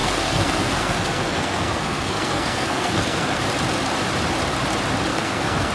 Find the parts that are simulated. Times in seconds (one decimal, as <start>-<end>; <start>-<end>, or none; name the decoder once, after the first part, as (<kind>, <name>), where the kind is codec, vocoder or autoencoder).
0.0-3.4 (codec, SNAC); 5.1-5.7